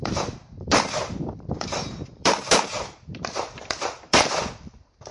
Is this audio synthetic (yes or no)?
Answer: yes